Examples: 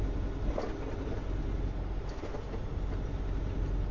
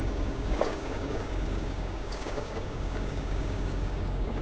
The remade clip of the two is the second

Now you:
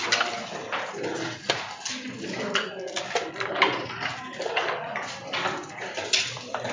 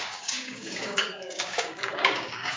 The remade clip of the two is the second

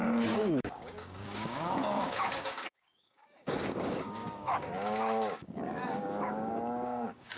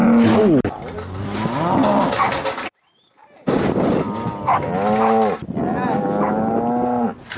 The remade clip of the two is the first